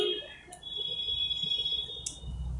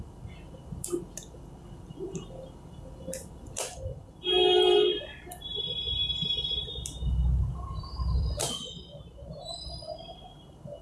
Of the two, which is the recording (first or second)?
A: first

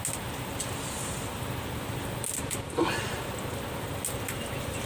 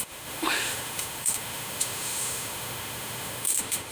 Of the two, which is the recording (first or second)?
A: first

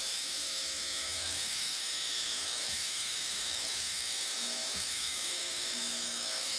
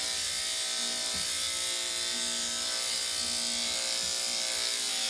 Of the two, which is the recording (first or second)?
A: second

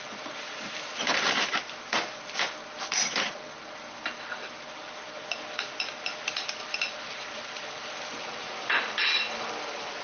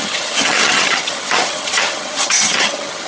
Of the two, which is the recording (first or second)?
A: first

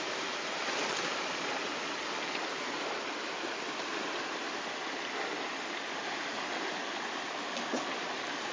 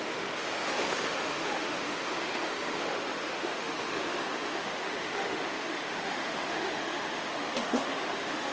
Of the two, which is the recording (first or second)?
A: first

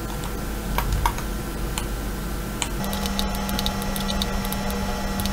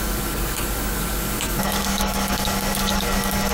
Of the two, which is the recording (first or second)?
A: first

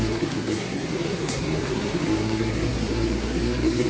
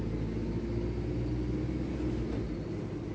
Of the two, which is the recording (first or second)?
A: second